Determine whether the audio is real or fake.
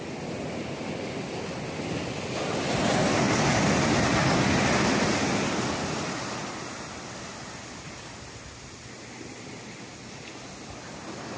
real